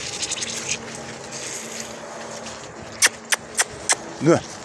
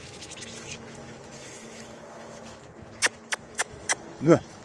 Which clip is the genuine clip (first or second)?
first